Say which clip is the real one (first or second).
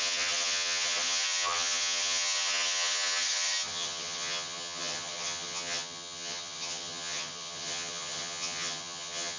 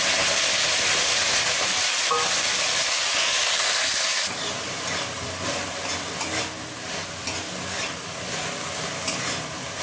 second